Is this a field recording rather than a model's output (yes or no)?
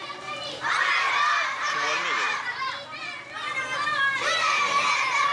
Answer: no